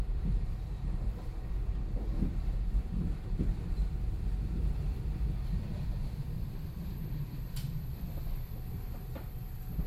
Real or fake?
fake